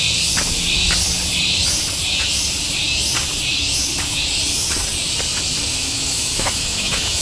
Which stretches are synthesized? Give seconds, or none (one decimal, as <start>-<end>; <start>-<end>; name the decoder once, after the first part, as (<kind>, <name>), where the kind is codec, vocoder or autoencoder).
5.7-7.2 (autoencoder, DAC-VAE)